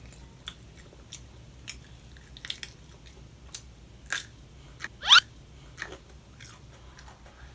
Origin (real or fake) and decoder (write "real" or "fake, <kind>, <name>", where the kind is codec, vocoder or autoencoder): real